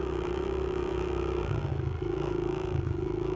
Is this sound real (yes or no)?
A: no